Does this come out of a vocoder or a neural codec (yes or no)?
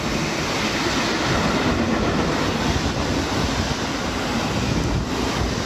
no